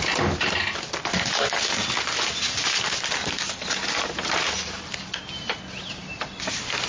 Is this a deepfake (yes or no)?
no